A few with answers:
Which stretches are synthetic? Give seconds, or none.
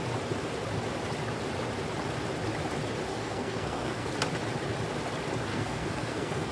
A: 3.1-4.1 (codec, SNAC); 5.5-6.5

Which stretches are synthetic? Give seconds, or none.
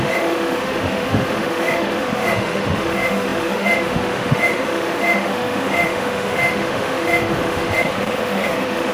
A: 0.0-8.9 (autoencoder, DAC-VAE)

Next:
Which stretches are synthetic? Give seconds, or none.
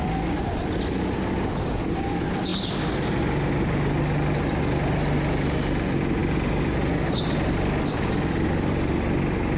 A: none